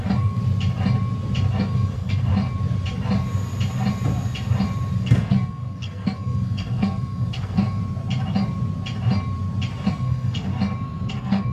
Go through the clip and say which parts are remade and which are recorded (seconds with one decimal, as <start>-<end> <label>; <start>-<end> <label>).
0.0-0.4 remade; 0.4-1.6 recorded; 1.6-2.3 remade; 2.3-5.0 recorded; 5.0-7.8 remade; 7.8-9.9 recorded; 9.9-10.5 remade; 10.5-11.1 recorded; 11.1-11.5 remade